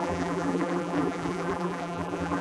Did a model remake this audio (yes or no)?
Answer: yes